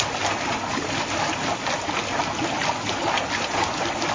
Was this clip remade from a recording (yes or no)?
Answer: no